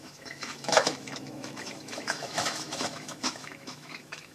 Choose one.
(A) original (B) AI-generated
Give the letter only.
B